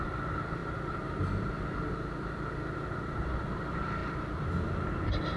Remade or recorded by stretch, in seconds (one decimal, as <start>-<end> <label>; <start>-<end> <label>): 0.0-0.6 recorded; 0.6-1.5 remade; 1.5-5.4 recorded